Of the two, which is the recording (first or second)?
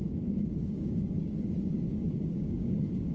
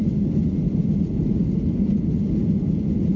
second